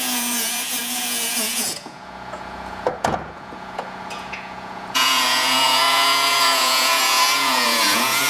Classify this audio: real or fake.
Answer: fake